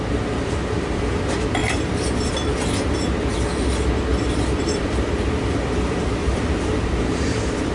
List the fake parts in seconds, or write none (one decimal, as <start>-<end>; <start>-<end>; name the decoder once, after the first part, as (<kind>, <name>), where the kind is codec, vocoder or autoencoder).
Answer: 1.6-2.3 (vocoder, BigVGAN v2); 4.1-7.7